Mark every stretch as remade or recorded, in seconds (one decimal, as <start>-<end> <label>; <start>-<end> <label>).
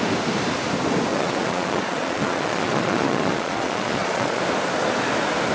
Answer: 0.0-1.1 recorded; 1.1-4.4 remade; 4.4-5.5 recorded